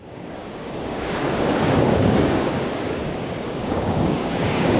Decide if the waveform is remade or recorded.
remade